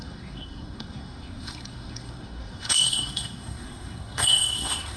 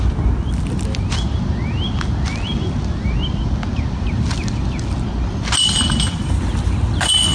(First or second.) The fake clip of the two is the first